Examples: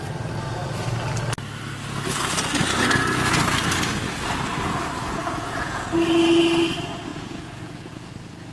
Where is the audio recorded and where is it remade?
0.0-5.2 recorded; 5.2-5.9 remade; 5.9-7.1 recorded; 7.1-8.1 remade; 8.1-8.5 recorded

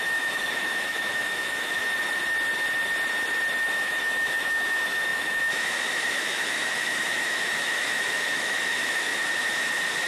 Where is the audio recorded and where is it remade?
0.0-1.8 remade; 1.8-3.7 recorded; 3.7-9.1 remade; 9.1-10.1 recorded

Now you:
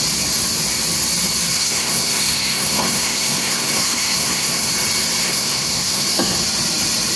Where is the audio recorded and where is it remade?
0.0-1.5 recorded; 1.5-4.7 remade; 4.7-5.2 recorded; 5.2-6.4 remade; 6.4-7.2 recorded